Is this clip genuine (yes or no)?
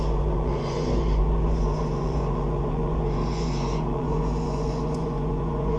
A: no